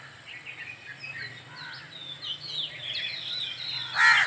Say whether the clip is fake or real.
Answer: real